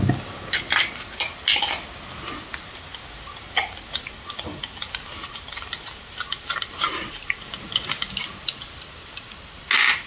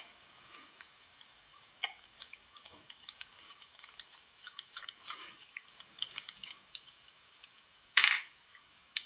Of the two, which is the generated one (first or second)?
second